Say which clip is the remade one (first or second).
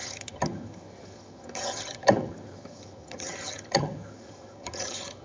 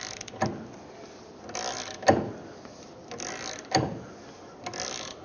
first